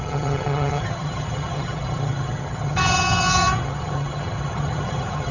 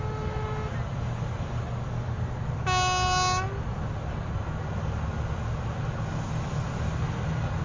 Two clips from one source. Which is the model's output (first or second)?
first